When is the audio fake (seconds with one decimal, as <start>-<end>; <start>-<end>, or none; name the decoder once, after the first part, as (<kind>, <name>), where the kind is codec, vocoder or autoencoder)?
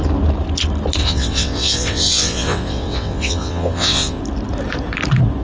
1.0-4.2 (vocoder, WaveNeXt)